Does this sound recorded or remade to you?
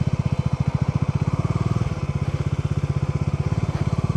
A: recorded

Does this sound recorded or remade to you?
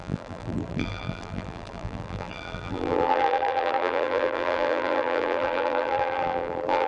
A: remade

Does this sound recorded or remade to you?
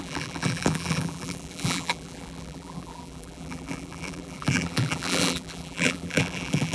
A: remade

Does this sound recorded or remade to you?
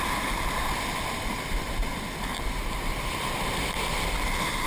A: remade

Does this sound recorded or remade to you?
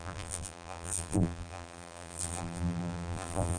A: remade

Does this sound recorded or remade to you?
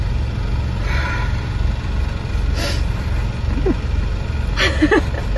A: recorded